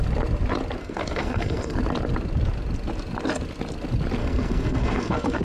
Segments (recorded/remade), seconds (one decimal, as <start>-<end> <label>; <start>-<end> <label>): 0.0-0.8 recorded; 0.8-1.8 remade; 1.8-4.2 recorded; 4.2-5.4 remade